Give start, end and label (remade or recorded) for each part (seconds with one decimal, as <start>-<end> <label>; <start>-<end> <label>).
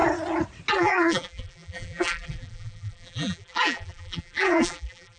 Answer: 0.0-0.7 recorded; 0.7-5.2 remade